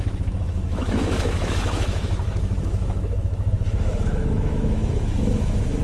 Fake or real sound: fake